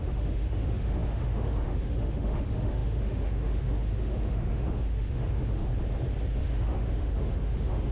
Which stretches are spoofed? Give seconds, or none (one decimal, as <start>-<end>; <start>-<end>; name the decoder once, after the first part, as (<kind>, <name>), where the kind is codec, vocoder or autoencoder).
0.0-5.7 (autoencoder, DAC-VAE); 6.4-7.9